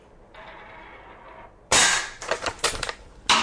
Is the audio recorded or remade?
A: recorded